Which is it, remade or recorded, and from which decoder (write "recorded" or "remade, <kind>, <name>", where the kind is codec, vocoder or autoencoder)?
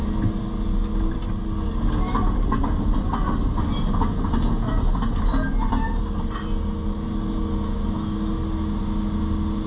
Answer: recorded